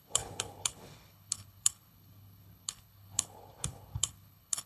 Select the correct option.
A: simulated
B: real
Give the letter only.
A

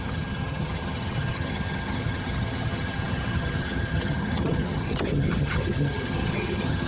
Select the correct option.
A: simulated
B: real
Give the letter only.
A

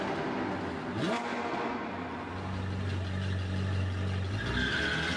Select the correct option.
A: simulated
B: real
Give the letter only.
B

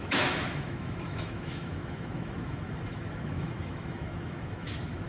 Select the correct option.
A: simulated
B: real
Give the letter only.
A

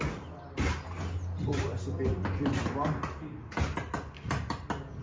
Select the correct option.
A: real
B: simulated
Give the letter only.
A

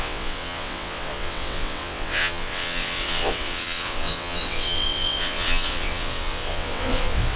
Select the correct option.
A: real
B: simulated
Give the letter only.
B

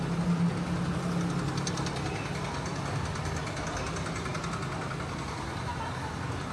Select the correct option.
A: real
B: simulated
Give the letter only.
A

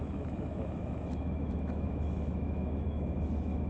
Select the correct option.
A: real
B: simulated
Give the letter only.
B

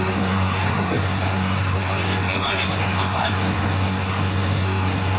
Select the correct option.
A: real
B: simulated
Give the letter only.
B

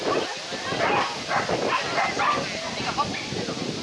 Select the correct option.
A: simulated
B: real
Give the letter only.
B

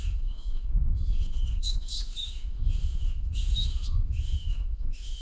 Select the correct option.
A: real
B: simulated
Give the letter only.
B